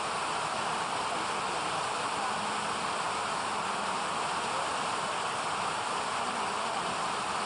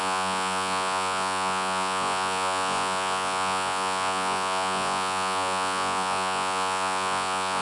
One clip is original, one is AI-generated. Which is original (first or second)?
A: first